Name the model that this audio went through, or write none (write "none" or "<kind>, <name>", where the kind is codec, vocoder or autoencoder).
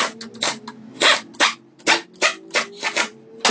none